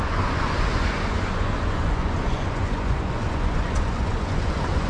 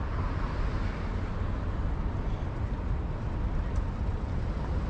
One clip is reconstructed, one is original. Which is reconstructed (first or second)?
first